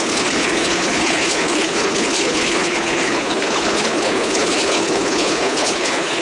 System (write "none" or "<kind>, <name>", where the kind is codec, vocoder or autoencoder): codec, HILCodec